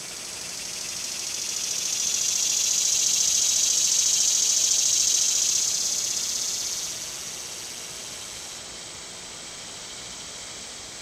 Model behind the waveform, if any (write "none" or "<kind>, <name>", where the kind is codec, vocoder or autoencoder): none